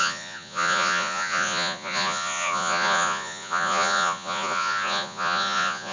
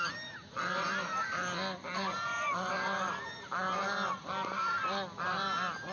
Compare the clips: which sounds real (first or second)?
second